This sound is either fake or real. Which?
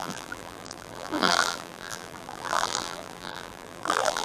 fake